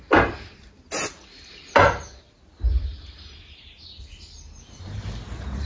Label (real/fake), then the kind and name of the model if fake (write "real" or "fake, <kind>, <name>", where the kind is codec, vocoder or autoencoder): real